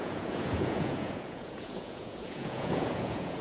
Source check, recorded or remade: remade